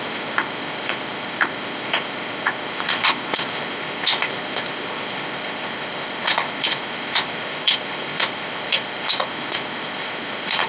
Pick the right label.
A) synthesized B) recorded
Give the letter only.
A